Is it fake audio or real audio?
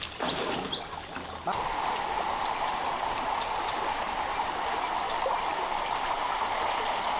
real